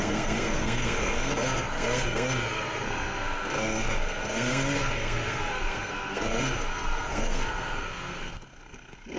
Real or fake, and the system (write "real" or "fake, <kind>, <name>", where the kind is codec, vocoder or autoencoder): fake, codec, SNAC